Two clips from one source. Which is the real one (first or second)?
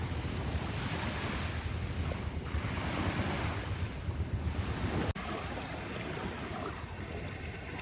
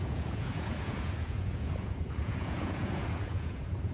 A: first